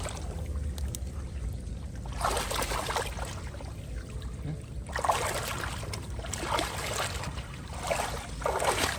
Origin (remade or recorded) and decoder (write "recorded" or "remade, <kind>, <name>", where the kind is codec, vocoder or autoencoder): recorded